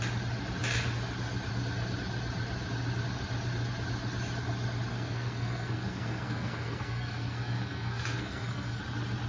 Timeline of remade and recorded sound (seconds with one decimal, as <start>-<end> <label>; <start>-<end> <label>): 0.0-4.9 recorded; 4.9-8.8 remade; 8.8-9.3 recorded